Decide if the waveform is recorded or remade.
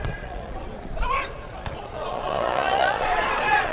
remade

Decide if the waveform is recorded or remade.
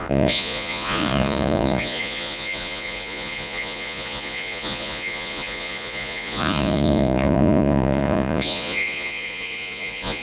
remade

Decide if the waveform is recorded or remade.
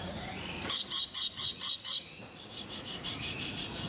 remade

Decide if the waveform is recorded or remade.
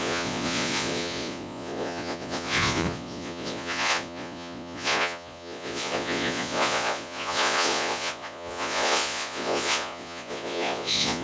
remade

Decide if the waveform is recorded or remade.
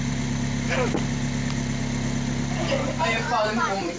recorded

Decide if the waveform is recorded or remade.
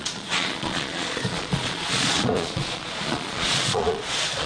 remade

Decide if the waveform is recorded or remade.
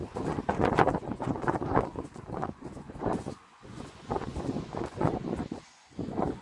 remade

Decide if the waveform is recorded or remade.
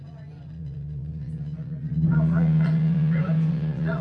remade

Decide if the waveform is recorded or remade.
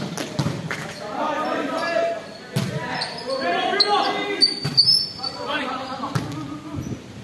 recorded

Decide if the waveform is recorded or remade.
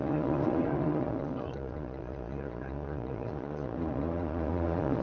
remade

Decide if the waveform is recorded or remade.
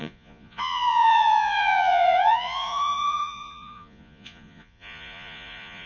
remade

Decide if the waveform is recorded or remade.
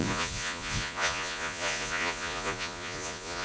remade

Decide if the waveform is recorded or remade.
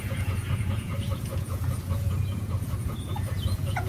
remade